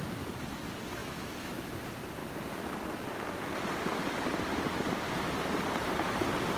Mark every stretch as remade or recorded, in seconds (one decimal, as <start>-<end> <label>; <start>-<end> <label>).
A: 0.0-1.0 recorded; 1.0-1.8 remade; 1.8-6.6 recorded